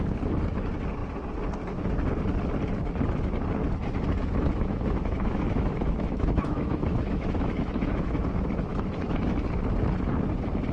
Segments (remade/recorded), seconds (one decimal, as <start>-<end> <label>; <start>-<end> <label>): 0.0-4.2 recorded; 4.2-8.2 remade; 8.2-8.7 recorded; 8.7-9.2 remade; 9.2-10.7 recorded